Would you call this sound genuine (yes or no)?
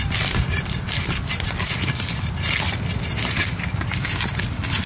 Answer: yes